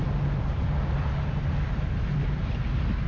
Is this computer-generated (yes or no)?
no